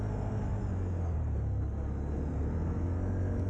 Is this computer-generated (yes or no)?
no